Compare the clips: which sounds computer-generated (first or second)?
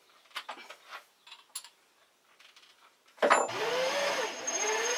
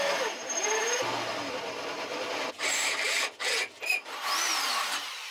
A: second